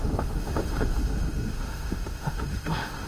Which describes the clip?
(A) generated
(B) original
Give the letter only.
A